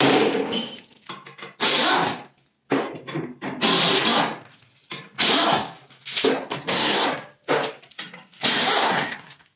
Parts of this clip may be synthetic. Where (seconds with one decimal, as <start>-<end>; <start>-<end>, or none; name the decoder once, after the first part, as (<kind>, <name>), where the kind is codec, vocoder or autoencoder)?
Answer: 6.3-7.1 (codec, SNAC); 8.8-9.6